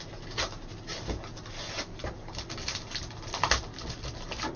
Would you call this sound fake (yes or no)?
no